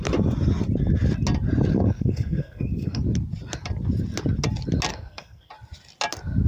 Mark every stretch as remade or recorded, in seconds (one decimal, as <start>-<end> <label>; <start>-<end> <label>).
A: 0.0-1.7 recorded; 1.7-3.0 remade; 3.0-4.9 recorded; 4.9-5.5 remade; 5.5-6.5 recorded